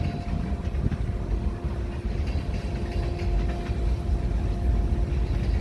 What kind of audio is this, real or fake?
real